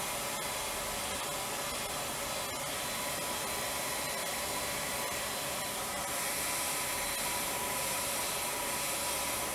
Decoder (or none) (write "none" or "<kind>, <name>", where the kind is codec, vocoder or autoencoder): none